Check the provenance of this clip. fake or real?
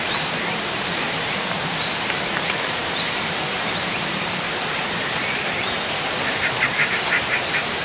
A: fake